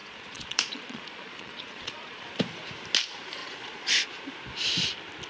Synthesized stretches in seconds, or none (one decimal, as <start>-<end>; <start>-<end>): 0.0-2.3; 3.4-4.2